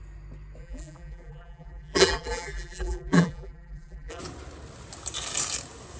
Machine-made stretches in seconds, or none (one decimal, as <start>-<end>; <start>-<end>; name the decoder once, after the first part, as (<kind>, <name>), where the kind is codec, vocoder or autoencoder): 0.6-4.2 (vocoder, BigVGAN v2)